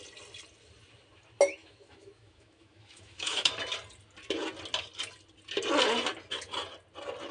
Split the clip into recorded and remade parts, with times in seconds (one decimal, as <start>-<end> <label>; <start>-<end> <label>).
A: 0.0-1.6 recorded; 1.6-3.5 remade; 3.5-7.3 recorded